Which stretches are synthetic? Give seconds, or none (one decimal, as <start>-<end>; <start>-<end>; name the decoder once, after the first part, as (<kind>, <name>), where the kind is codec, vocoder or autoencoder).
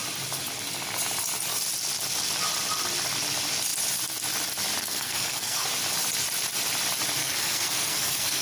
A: 4.8-5.7 (codec, SNAC); 7.2-8.4